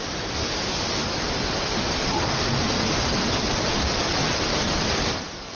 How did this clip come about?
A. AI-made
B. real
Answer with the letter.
B